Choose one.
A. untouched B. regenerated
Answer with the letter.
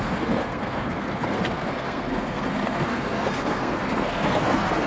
B